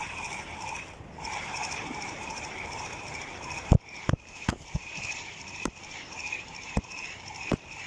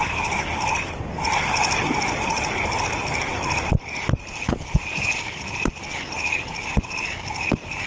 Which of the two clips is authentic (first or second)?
second